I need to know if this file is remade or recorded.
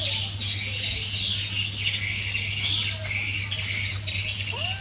recorded